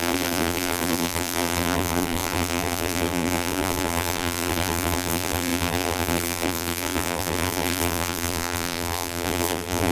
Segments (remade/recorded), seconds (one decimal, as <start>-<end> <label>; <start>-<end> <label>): 0.0-9.9 remade